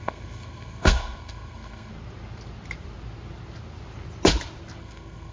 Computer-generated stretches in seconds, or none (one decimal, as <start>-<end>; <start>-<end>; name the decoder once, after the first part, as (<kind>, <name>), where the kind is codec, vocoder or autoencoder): 0.0-1.9 (codec, SNAC); 4.8-5.3